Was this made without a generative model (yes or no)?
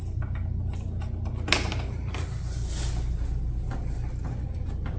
yes